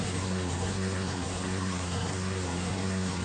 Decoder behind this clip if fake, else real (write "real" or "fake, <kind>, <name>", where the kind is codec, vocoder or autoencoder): fake, codec, SNAC